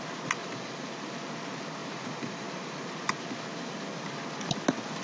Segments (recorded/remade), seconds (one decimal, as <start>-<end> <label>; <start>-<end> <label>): 0.0-0.4 recorded; 0.4-0.9 remade; 0.9-1.8 recorded; 1.8-2.9 remade; 2.9-5.0 recorded